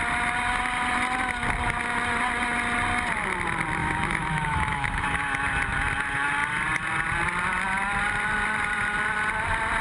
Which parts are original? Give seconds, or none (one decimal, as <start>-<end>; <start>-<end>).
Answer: 0.0-3.8; 5.3-9.8